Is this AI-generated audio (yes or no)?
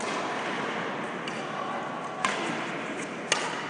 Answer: no